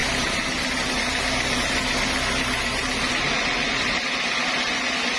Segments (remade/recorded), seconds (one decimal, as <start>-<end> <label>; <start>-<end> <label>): 0.0-5.2 recorded